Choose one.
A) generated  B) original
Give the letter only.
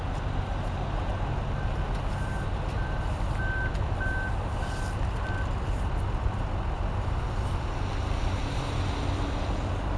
B